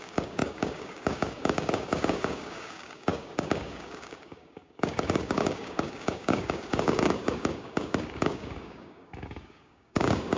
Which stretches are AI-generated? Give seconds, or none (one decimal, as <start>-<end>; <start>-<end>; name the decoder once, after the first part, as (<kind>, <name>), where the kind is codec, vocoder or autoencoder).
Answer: 0.0-10.4 (codec, DAC)